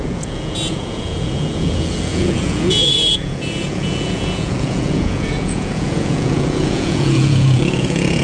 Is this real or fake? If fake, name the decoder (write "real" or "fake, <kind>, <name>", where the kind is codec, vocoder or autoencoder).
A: fake, vocoder, Vocos